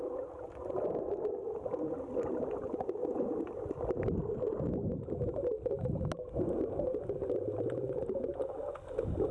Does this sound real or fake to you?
real